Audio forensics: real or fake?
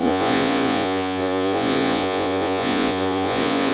fake